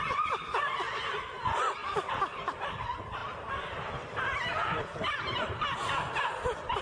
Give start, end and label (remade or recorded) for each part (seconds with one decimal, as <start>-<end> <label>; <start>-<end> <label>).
0.0-1.8 recorded; 1.8-2.7 remade; 2.7-6.8 recorded